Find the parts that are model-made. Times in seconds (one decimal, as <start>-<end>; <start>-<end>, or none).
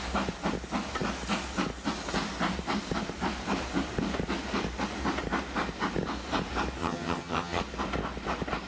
6.8-7.6